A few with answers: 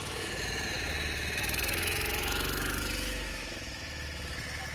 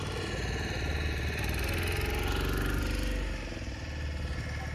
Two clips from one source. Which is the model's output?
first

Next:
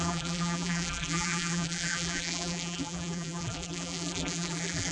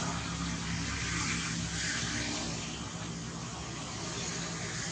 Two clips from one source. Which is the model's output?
first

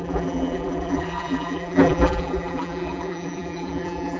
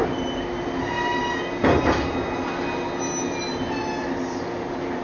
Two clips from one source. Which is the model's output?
first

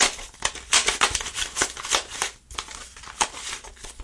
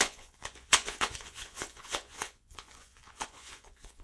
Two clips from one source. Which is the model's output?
second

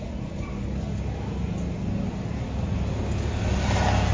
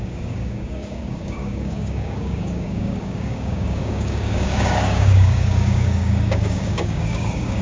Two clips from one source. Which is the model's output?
second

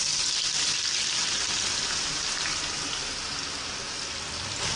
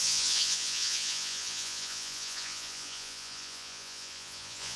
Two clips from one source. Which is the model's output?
second